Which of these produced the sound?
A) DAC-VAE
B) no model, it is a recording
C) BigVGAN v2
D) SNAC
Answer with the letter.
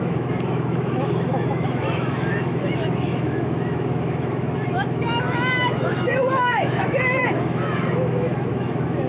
A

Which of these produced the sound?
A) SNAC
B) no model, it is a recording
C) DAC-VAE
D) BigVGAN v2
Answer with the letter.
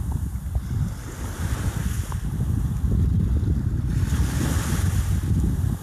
B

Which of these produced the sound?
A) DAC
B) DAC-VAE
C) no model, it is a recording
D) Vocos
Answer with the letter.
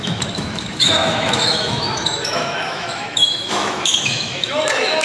B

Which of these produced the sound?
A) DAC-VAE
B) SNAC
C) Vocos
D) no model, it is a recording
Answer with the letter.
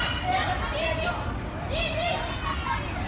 D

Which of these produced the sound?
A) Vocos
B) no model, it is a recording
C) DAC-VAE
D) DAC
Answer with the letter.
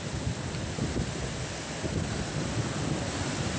B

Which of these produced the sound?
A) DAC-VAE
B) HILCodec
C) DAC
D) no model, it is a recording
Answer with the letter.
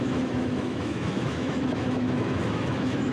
A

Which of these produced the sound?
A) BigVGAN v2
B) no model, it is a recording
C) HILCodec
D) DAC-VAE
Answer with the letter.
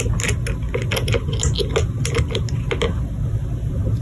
B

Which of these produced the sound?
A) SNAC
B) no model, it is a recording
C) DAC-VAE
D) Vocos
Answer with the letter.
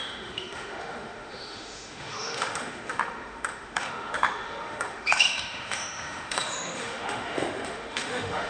C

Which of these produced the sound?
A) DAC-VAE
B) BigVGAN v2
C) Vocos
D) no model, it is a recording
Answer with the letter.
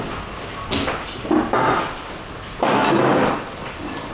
D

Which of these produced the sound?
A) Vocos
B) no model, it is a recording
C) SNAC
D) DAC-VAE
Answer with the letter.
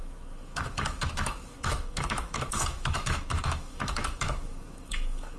D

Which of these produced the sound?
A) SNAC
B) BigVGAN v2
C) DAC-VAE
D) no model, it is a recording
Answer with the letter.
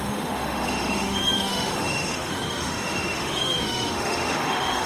C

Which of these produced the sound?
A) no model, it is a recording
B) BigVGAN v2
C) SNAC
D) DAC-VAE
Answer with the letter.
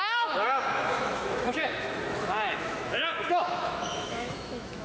D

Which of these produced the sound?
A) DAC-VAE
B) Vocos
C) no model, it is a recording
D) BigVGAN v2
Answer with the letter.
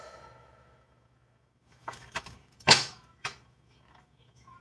A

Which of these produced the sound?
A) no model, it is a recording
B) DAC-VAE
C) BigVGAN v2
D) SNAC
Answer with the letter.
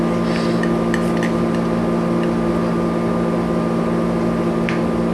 A